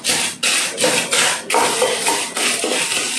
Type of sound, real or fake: real